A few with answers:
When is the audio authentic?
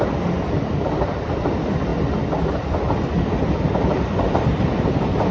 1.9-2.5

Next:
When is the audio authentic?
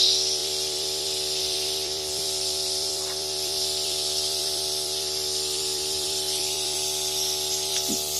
none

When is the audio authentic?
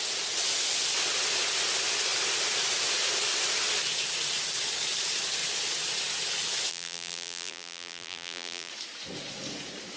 0.0-6.7; 8.7-10.0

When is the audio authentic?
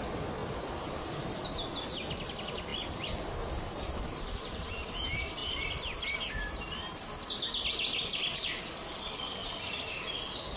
0.0-0.4; 1.5-2.7; 4.7-5.4; 6.9-10.6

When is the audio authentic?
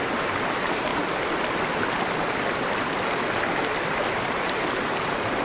0.9-4.1